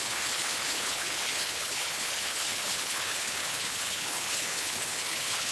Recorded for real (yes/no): no